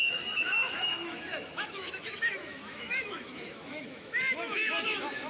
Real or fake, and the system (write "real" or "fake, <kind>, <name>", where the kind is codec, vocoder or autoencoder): fake, autoencoder, DAC-VAE